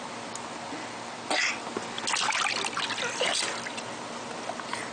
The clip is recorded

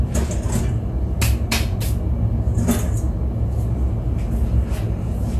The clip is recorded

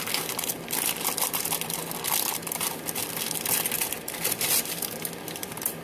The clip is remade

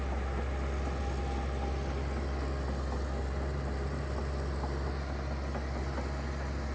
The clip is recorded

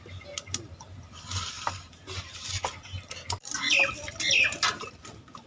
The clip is recorded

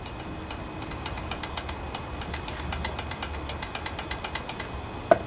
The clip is recorded